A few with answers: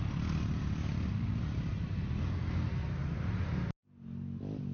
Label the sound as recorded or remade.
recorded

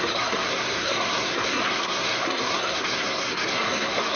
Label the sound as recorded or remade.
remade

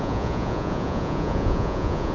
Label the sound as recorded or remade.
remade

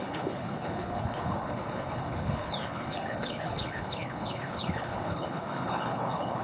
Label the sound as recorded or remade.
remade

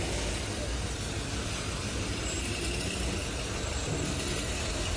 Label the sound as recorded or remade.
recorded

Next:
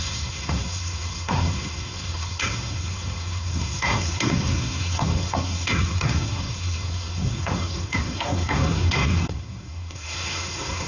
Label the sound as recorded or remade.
remade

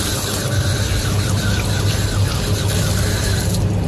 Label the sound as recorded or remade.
recorded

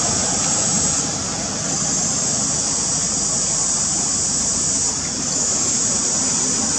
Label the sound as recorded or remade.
recorded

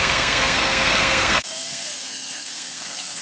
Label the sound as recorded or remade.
remade